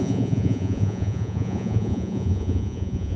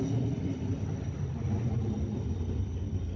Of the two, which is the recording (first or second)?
second